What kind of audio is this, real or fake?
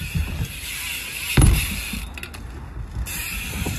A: real